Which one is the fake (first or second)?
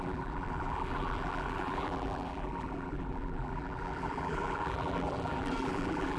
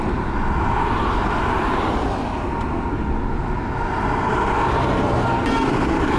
first